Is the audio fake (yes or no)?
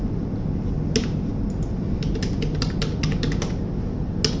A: no